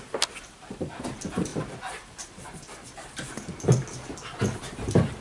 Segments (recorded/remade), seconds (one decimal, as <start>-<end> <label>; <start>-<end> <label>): 0.0-5.2 recorded